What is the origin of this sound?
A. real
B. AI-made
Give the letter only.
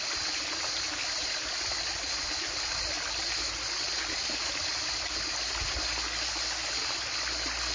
A